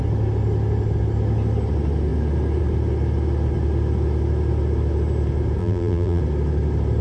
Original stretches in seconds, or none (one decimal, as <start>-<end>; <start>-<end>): 0.0-5.6; 6.2-7.0